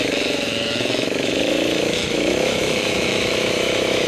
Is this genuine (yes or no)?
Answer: no